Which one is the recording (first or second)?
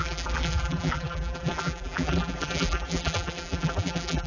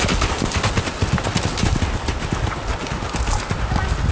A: second